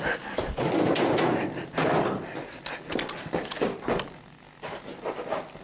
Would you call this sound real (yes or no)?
yes